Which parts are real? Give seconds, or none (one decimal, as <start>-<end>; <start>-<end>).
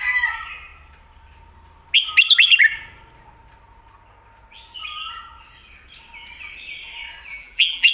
0.0-7.3